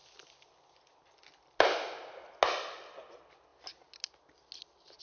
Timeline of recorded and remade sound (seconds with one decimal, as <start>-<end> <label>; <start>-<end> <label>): 0.0-5.0 recorded